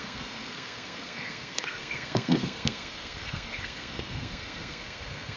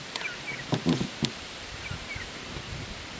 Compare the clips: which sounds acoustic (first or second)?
second